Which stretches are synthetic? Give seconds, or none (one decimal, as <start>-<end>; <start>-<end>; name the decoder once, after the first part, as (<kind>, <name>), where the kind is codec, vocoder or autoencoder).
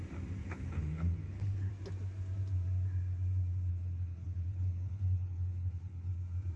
0.4-1.7 (codec, HILCodec); 3.7-6.1